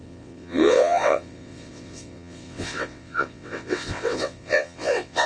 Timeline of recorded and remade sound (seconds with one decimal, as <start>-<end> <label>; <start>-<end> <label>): 0.0-5.3 remade